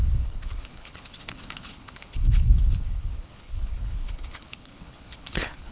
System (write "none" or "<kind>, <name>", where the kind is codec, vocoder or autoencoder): codec, HILCodec